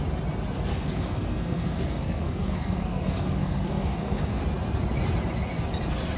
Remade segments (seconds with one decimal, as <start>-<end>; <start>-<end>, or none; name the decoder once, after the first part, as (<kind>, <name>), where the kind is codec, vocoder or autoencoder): 0.7-4.4 (codec, SNAC)